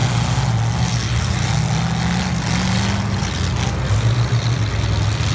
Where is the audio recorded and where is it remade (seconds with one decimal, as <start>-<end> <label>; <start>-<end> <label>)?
0.0-5.3 recorded